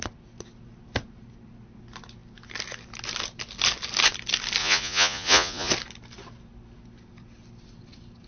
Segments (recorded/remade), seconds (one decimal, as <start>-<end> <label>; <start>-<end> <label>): 0.0-4.6 recorded; 4.6-5.7 remade; 5.7-8.3 recorded